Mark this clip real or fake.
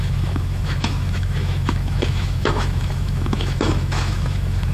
fake